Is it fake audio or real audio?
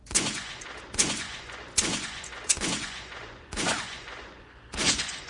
fake